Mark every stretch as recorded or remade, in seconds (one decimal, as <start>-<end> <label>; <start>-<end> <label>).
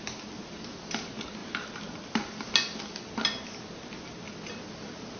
0.0-5.2 recorded